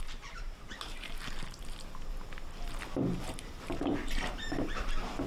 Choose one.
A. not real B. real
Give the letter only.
A